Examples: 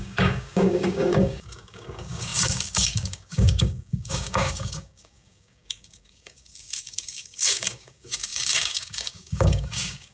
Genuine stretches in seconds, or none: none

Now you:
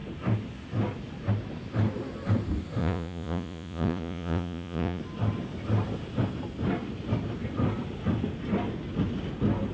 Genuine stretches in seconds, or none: 0.0-2.8; 5.0-9.7

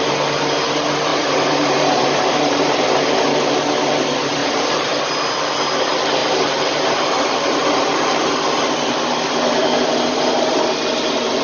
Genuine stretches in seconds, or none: 0.0-1.1; 2.8-4.4; 5.0-6.2; 8.3-11.4

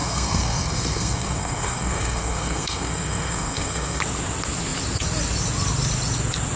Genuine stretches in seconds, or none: 4.0-6.6

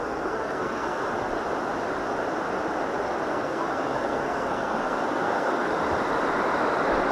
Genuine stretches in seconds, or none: 1.0-3.3; 5.7-7.1